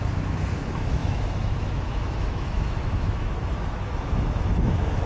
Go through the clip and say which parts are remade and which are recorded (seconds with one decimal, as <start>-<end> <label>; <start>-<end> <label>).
0.0-5.1 remade